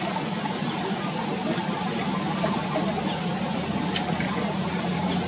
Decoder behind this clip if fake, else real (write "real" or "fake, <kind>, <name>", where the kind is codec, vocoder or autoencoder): real